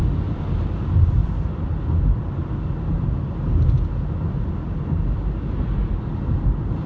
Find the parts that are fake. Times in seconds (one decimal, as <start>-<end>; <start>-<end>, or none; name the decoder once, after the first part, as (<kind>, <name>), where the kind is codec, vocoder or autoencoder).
none